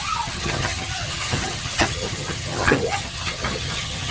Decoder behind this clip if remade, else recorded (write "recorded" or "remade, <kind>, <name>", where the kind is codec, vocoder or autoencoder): remade, vocoder, HiFi-GAN